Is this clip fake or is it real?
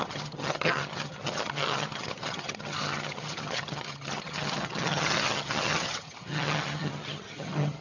fake